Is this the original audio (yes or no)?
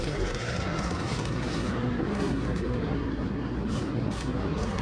no